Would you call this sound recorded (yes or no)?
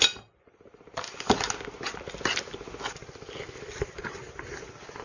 yes